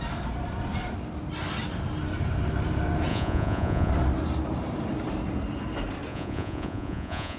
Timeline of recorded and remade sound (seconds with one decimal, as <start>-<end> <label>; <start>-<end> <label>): 0.0-3.1 recorded; 3.1-3.9 remade; 3.9-6.1 recorded; 6.1-7.4 remade